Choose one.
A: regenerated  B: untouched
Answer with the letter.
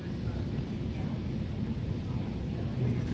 B